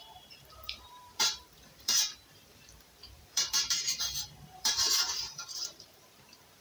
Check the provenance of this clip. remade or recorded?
remade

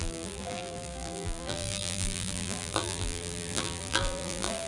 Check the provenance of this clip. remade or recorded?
remade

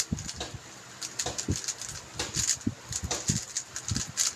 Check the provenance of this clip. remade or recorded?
recorded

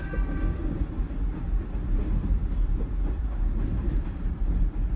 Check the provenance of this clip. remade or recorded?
remade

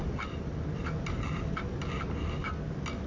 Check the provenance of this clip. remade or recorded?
recorded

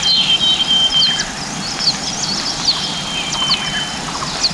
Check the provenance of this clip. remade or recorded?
recorded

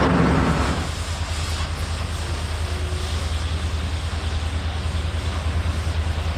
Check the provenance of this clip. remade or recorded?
recorded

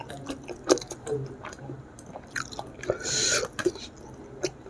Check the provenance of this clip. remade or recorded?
recorded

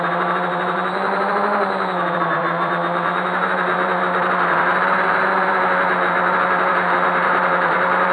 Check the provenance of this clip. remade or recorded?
remade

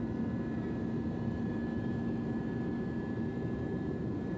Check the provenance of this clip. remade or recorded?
remade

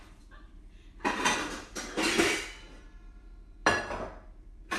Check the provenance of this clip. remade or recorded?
remade